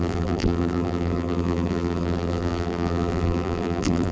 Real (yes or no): no